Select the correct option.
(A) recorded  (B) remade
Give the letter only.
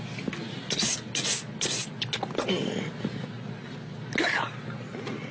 A